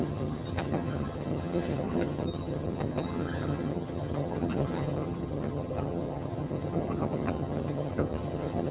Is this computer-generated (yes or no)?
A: yes